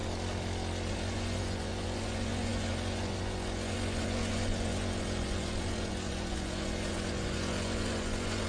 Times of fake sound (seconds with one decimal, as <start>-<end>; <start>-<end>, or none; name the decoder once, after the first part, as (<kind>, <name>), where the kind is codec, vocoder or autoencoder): 0.9-8.5 (vocoder, Vocos)